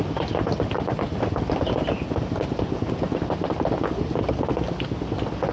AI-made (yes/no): no